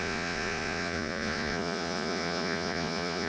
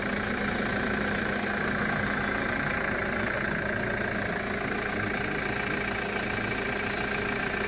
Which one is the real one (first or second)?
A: second